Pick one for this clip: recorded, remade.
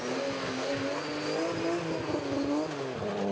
recorded